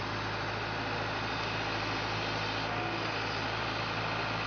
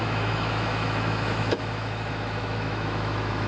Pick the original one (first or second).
first